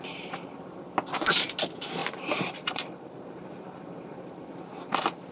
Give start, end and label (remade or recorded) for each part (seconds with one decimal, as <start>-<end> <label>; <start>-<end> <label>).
0.0-2.0 recorded; 2.0-4.2 remade; 4.2-5.3 recorded